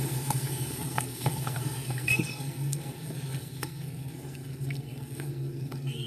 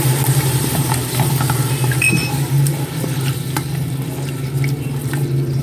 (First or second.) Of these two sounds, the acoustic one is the second